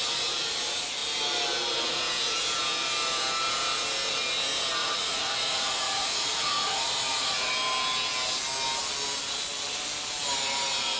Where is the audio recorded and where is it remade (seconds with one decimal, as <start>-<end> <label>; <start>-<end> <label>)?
0.0-4.8 recorded; 4.8-7.5 remade; 7.5-11.0 recorded